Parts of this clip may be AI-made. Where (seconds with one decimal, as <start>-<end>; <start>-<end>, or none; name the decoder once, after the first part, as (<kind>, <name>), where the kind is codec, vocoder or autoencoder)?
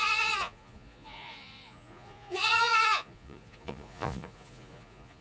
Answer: 0.0-5.2 (vocoder, Vocos)